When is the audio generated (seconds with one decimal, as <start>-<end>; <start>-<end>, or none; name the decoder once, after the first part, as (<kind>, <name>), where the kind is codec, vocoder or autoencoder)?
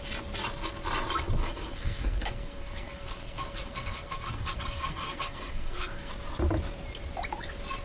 1.4-6.1 (codec, SNAC)